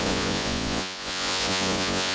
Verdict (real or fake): fake